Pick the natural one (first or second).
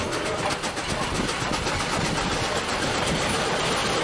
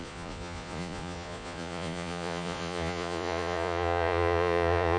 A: first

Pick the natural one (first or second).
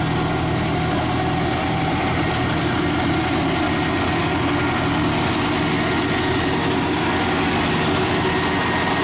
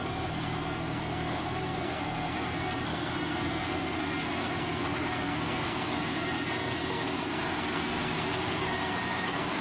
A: first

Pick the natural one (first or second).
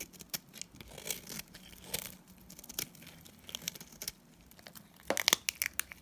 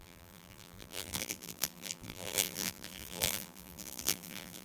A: first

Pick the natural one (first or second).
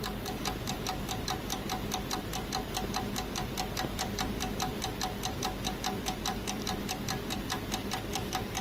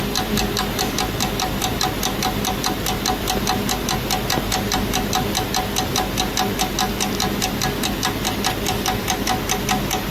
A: second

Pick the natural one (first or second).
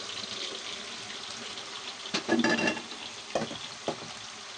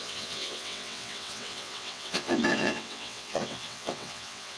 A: first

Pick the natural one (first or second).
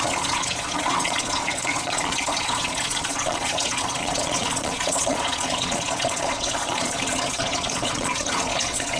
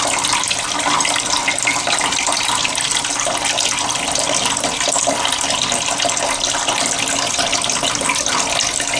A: second